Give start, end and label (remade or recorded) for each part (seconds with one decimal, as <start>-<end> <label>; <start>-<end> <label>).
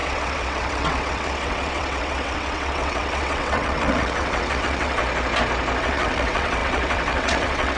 0.0-5.0 remade; 5.0-5.8 recorded; 5.8-7.8 remade